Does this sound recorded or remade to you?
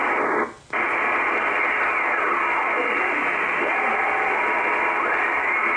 recorded